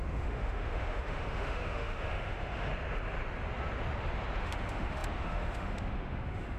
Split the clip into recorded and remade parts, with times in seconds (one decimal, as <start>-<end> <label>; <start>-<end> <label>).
0.0-2.7 remade; 2.7-4.4 recorded; 4.4-6.6 remade